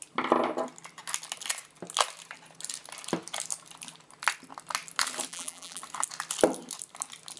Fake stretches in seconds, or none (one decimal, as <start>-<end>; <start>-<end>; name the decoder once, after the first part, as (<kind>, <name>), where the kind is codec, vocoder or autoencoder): 5.3-5.8 (vocoder, BigVGAN v2)